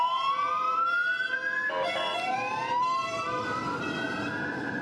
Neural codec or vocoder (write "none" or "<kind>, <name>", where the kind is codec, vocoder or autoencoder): vocoder, BigVGAN v2